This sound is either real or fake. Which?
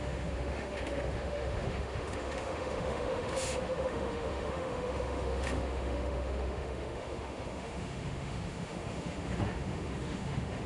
fake